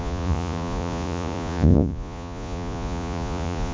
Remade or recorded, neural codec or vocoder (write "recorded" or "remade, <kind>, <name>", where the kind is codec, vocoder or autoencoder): remade, vocoder, Vocos